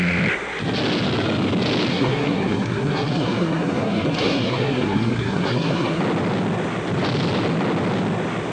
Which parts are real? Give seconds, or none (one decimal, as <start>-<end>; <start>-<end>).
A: 0.0-1.9; 6.0-8.5